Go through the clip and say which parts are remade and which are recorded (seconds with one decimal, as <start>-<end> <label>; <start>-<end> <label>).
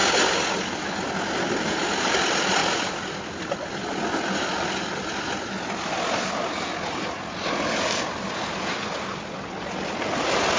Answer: 0.0-10.6 recorded